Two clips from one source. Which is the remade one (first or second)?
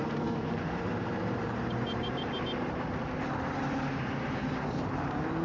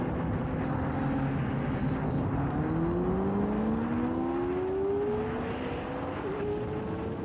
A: first